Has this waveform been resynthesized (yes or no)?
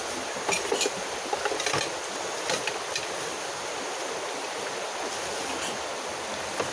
no